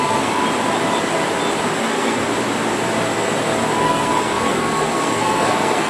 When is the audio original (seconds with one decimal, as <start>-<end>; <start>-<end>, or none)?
0.4-1.8; 2.2-3.8